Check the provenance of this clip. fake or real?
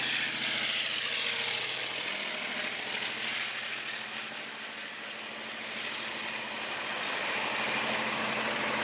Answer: real